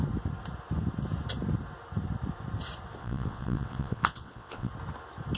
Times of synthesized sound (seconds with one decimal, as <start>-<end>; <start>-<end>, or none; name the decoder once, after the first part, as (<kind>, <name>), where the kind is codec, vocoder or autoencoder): 3.0-4.7 (vocoder, WaveNeXt)